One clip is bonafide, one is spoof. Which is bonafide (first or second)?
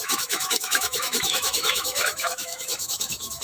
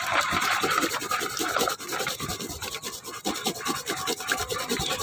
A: second